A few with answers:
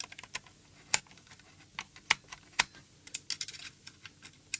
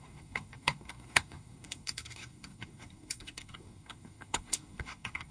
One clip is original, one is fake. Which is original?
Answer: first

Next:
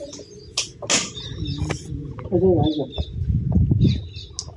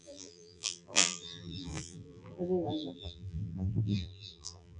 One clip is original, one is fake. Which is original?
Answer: first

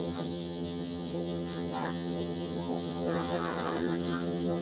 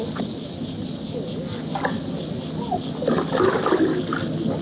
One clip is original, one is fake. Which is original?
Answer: second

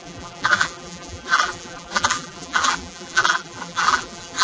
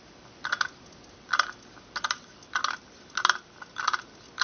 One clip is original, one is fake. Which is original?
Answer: second